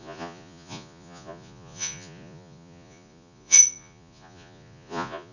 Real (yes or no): no